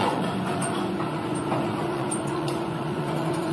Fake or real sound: fake